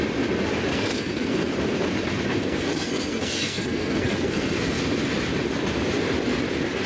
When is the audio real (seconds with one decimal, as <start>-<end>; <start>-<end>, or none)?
0.0-0.7; 1.5-2.3; 4.8-6.9